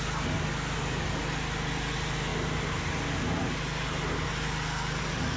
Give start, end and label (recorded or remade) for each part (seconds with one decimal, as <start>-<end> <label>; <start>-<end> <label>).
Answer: 0.0-5.4 recorded